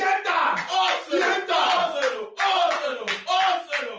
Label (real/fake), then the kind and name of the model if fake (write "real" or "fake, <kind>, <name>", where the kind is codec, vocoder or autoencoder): real